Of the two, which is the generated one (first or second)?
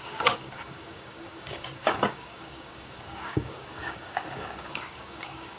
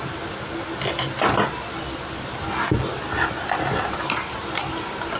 first